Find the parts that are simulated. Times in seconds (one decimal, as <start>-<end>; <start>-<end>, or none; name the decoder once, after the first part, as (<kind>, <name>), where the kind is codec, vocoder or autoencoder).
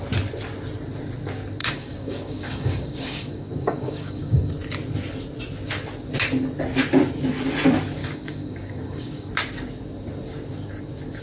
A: 1.6-4.5 (codec, DAC); 8.0-9.3